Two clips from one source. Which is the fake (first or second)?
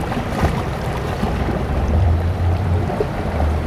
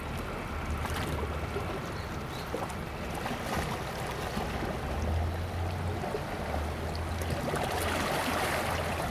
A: first